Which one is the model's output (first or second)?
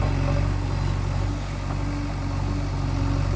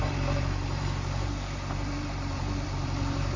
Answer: second